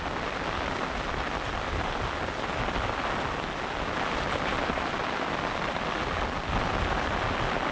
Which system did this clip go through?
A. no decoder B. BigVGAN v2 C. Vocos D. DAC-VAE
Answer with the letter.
A